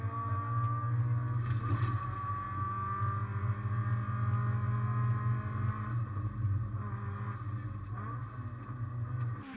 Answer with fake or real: real